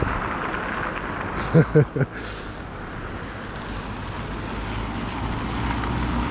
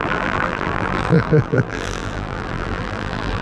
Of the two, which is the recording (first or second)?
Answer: first